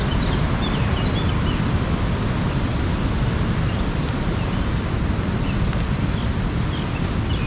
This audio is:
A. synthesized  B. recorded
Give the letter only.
B